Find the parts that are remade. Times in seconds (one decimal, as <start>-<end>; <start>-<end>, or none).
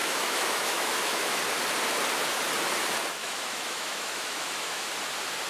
0.0-1.4; 3.2-4.9